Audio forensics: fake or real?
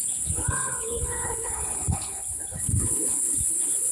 fake